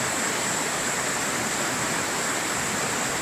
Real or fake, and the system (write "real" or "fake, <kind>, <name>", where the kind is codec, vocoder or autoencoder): real